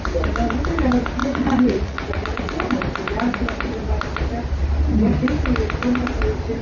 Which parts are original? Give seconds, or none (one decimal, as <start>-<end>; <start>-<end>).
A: 0.0-1.2; 2.7-6.6